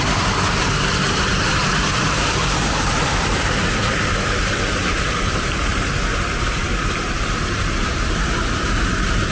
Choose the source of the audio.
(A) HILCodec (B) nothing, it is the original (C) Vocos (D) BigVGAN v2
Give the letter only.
D